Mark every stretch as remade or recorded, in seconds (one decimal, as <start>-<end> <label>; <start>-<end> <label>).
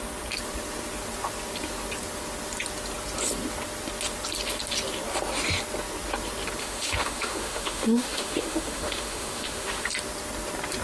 0.0-6.6 recorded; 6.6-9.9 remade; 9.9-10.8 recorded